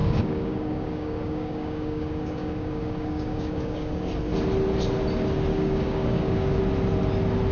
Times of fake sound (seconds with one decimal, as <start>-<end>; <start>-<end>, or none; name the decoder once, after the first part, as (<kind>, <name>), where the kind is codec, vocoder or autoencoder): 0.0-4.1 (codec, DAC); 5.5-6.6